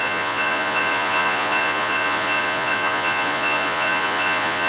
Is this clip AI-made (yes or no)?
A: yes